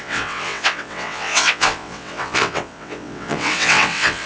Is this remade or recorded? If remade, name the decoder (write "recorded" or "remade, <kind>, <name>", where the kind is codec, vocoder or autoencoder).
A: remade, vocoder, WaveNeXt